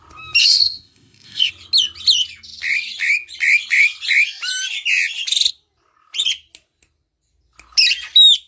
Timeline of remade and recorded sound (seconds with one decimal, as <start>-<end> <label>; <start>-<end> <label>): 0.0-0.4 recorded; 0.4-1.5 remade; 1.5-8.5 recorded